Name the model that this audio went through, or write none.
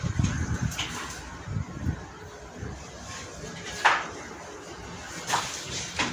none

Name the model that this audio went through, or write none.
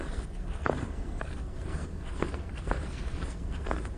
codec, SNAC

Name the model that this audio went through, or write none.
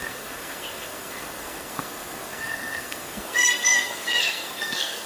codec, SNAC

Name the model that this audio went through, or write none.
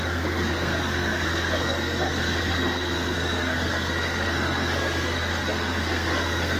codec, SNAC